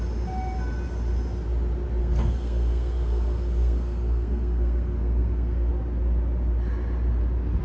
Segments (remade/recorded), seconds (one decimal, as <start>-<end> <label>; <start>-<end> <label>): 0.0-2.0 recorded; 2.0-5.7 remade; 5.7-7.6 recorded